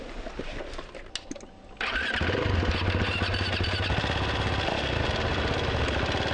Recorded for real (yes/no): yes